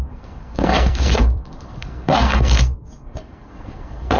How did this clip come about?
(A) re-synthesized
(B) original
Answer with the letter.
A